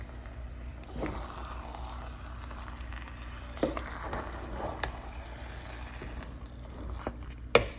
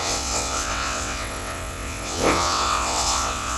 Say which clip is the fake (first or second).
second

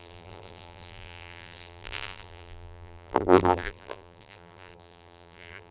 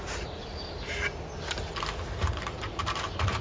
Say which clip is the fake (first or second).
first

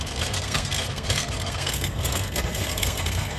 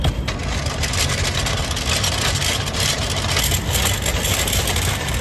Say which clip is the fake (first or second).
first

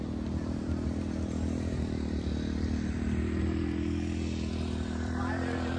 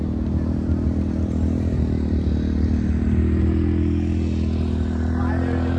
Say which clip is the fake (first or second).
first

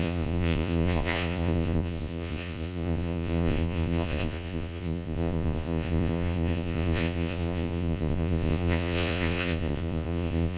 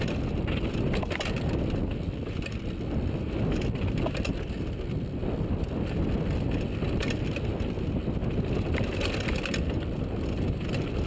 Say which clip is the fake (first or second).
first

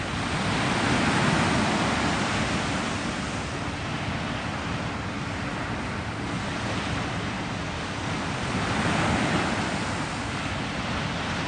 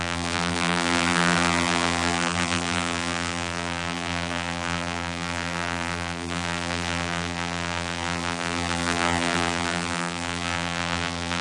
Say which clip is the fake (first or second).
second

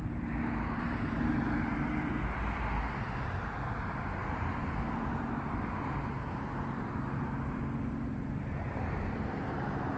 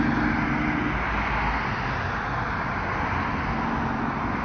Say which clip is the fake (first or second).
first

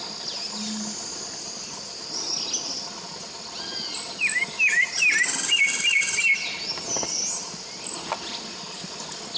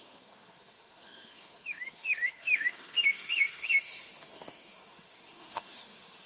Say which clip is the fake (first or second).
second